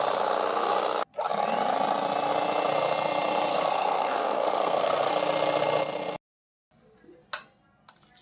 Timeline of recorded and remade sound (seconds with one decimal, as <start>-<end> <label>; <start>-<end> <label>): 0.0-3.5 recorded; 3.5-5.1 remade; 5.1-8.2 recorded